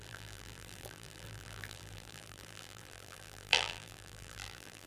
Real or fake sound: fake